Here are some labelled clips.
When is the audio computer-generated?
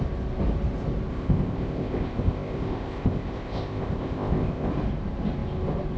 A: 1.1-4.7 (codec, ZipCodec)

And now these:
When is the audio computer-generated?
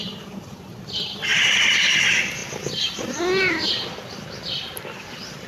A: none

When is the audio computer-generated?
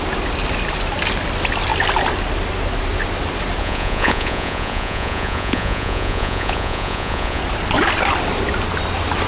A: 3.6-7.4 (vocoder, Vocos)